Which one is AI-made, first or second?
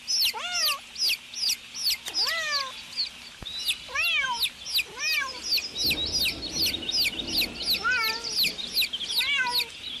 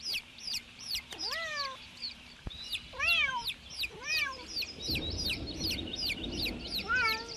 second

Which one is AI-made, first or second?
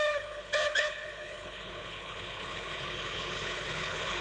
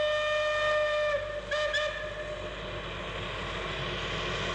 first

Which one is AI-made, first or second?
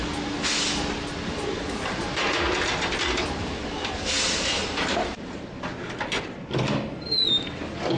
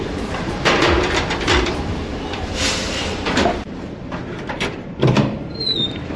second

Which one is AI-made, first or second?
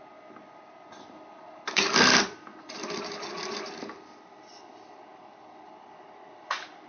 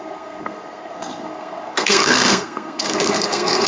second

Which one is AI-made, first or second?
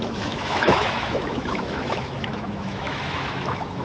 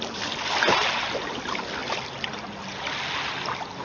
first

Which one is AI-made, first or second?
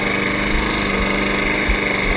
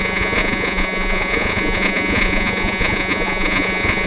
second